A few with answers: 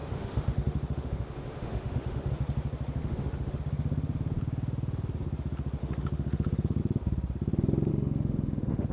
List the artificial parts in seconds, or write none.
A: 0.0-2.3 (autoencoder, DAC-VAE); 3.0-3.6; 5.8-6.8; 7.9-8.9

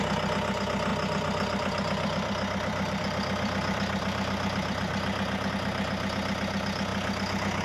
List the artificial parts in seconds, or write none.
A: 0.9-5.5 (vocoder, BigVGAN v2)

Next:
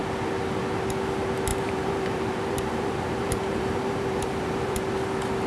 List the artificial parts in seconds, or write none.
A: 1.5-4.8 (vocoder, BigVGAN v2)

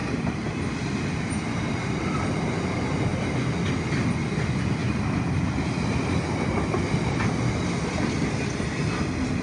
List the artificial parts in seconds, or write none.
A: 0.0-2.1 (vocoder, BigVGAN v2); 3.1-3.7

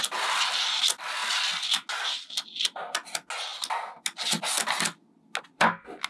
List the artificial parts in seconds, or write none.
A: none